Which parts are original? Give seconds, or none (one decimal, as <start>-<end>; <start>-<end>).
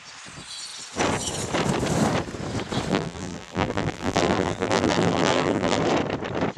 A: 0.0-2.9; 5.8-6.6